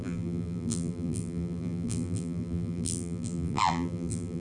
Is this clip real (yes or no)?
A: no